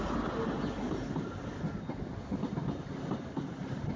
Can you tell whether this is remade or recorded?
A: recorded